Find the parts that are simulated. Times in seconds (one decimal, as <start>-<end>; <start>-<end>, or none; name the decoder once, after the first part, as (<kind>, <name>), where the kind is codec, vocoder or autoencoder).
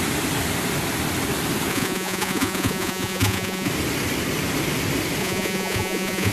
1.7-3.7 (vocoder, Vocos); 5.2-6.3